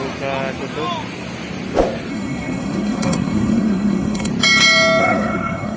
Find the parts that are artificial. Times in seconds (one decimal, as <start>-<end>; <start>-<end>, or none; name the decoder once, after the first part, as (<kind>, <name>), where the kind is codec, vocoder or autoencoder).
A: 2.1-4.3 (codec, SNAC); 5.0-5.8